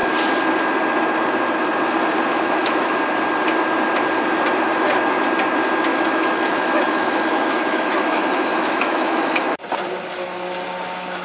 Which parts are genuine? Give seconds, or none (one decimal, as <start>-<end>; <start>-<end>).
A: 0.0-2.3; 2.9-5.9; 9.6-11.2